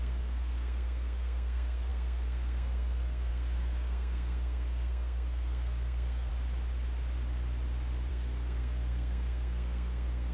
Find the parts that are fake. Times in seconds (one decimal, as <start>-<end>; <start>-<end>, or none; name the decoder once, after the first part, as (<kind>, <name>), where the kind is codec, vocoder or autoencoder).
0.0-6.3 (codec, SNAC); 8.1-10.3